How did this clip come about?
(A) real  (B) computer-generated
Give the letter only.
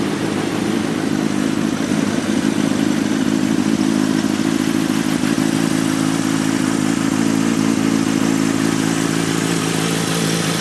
A